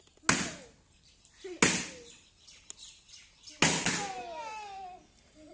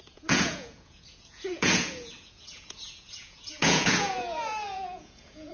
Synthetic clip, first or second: second